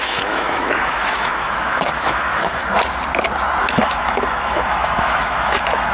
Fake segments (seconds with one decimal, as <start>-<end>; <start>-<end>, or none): 0.0-2.6; 3.6-5.9